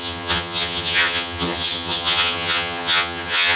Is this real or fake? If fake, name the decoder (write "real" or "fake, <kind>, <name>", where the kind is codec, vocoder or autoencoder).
fake, vocoder, HiFi-GAN